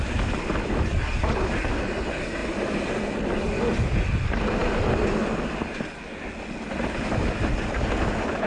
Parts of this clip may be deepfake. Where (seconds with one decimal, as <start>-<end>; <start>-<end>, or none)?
none